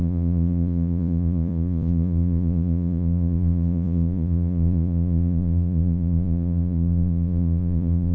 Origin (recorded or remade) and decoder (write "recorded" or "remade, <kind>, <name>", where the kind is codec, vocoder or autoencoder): remade, vocoder, Vocos